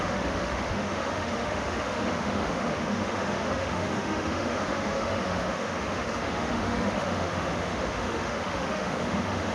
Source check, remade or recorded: remade